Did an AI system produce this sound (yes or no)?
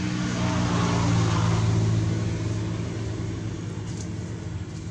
no